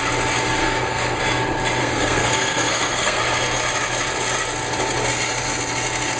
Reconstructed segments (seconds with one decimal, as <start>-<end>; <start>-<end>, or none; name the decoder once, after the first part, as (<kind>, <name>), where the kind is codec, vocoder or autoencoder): 0.6-1.2 (codec, SNAC); 1.8-3.2